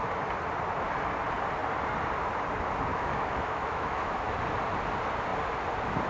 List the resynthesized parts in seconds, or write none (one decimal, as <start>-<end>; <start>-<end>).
2.9-4.3